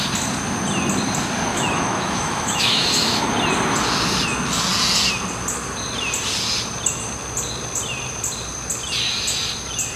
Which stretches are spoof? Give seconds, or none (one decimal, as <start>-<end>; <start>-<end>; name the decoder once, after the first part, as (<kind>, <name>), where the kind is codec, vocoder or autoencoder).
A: 1.5-3.3 (autoencoder, DAC-VAE)